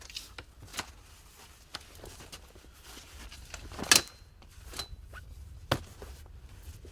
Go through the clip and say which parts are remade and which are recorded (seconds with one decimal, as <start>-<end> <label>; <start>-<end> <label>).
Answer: 0.0-6.9 recorded